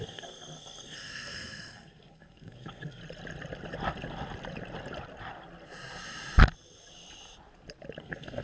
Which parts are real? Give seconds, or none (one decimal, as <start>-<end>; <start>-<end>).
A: 3.0-8.0